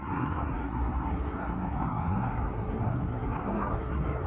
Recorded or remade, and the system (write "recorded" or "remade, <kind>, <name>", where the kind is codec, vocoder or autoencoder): remade, codec, SNAC